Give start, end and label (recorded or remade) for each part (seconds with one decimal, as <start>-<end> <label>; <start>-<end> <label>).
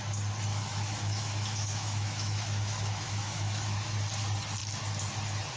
0.0-0.5 recorded; 0.5-3.9 remade; 3.9-5.6 recorded